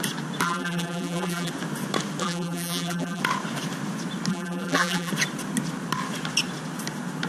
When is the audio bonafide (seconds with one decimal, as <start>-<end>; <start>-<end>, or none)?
0.0-0.4; 1.5-2.2; 3.2-4.3; 5.1-7.3